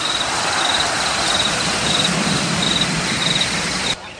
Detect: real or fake real